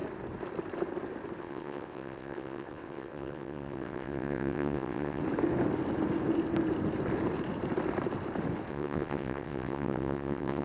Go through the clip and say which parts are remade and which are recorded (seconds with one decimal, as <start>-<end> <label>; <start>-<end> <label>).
0.0-1.4 recorded; 1.4-5.2 remade; 5.2-8.7 recorded; 8.7-10.6 remade